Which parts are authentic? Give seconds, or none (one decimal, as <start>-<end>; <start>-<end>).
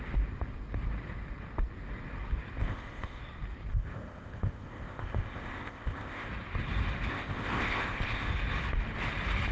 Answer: 0.0-2.6; 3.2-3.7; 6.3-7.1; 8.3-9.5